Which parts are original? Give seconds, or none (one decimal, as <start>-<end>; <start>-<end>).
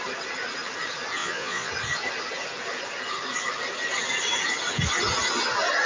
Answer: 0.0-1.2; 1.7-5.9